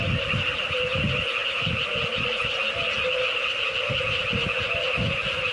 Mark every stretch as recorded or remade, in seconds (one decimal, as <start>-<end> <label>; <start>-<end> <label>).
0.0-5.5 recorded